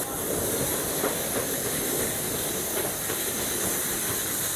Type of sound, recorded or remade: recorded